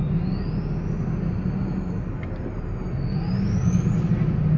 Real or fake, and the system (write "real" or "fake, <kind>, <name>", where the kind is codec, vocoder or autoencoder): real